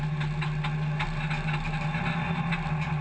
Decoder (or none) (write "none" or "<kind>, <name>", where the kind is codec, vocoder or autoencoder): none